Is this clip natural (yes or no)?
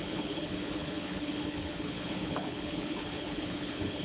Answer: no